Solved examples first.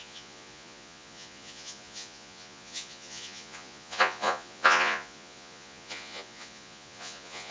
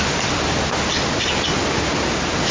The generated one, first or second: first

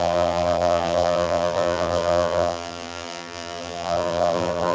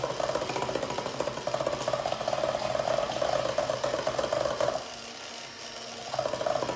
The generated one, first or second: first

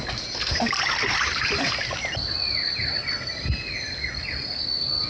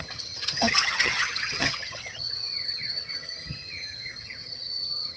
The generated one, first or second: second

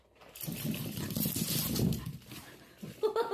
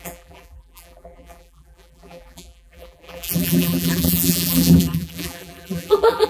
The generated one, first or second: second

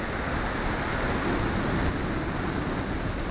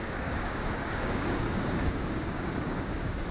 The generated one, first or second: second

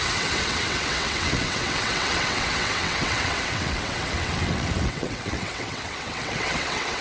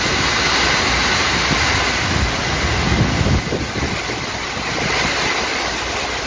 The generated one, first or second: first